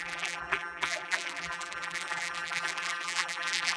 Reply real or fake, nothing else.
fake